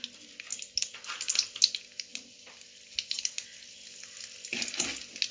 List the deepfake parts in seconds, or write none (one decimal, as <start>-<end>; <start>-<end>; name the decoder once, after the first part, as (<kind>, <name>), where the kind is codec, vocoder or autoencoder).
none